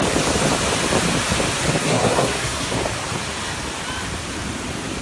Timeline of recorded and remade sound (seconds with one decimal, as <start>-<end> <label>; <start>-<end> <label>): 0.0-1.8 recorded; 1.8-2.8 remade; 2.8-5.0 recorded